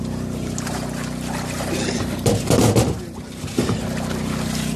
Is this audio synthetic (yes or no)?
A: no